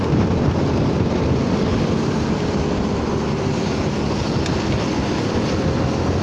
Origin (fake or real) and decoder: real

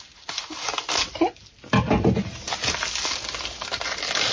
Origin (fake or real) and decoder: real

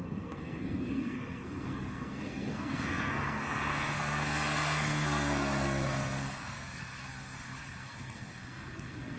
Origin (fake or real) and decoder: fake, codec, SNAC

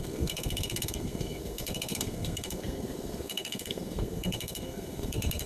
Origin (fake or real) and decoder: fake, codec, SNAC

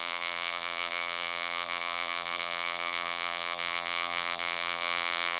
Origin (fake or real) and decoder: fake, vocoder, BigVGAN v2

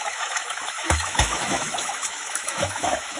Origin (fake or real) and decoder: fake, autoencoder, DAC-VAE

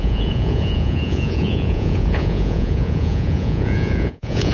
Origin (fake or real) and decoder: fake, vocoder, Vocos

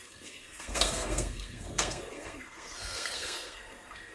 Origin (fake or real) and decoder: fake, codec, SNAC